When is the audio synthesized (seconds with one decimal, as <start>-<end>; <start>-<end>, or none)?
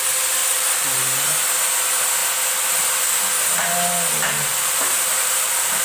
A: 0.4-1.0; 4.5-5.8